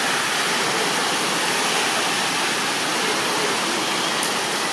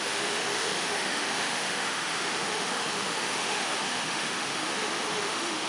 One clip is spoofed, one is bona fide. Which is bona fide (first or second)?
first